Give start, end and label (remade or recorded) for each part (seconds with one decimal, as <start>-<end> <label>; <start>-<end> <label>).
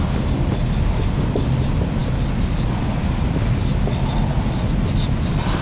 0.0-5.6 recorded